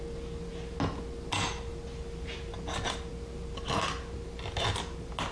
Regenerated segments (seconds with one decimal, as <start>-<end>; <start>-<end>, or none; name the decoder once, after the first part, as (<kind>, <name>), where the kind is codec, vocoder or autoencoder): none